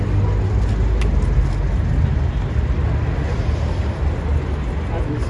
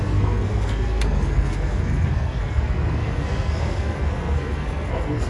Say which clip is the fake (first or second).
second